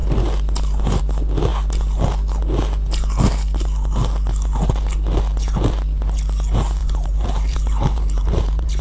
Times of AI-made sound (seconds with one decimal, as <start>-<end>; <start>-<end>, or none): 6.8-8.8